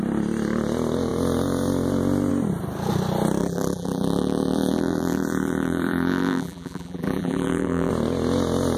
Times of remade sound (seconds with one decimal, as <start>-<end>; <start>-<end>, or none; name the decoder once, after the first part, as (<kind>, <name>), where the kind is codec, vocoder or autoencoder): 3.4-7.9 (vocoder, BigVGAN v2)